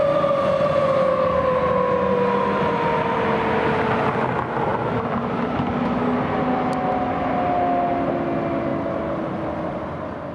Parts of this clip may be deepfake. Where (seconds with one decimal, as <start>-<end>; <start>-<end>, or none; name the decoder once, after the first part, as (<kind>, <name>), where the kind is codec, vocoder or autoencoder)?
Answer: none